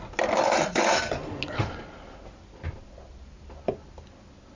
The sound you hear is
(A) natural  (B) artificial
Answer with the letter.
A